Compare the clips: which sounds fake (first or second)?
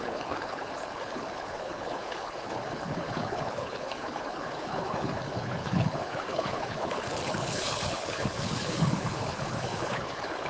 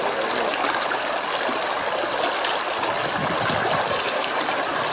first